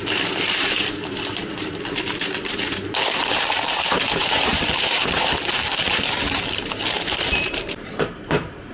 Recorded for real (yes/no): no